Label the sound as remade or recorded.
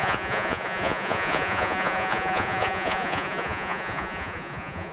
remade